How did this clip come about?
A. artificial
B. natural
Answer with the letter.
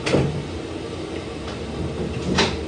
B